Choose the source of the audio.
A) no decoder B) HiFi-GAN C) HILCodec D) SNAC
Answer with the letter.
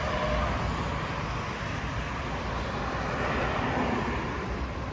A